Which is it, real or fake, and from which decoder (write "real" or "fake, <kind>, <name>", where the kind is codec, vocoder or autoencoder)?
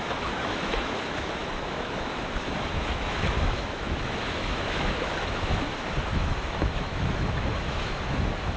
fake, autoencoder, DAC-VAE